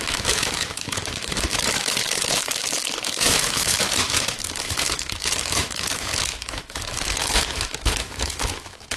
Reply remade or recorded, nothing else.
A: remade